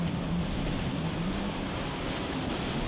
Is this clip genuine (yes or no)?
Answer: yes